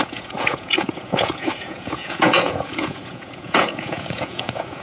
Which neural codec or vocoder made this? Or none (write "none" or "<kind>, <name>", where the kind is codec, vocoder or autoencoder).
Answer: vocoder, Vocos